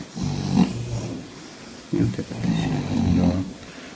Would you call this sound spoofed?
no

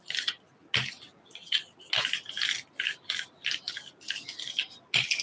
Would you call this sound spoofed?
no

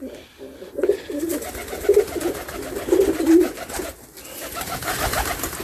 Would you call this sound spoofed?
no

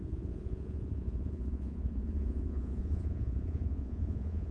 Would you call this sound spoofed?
yes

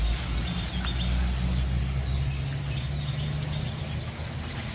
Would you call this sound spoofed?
no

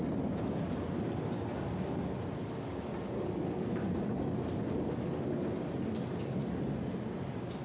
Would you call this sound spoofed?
no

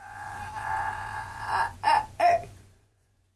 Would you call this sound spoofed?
yes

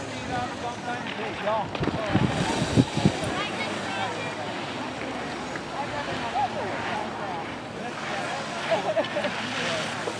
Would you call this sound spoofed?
no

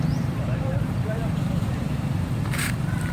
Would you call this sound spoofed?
yes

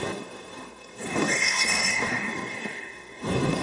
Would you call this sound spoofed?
yes